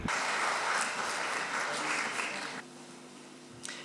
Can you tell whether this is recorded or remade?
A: recorded